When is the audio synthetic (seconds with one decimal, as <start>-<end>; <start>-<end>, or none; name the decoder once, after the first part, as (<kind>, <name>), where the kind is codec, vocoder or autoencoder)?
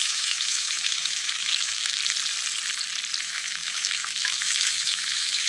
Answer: 0.0-2.0 (autoencoder, DAC-VAE); 3.2-5.5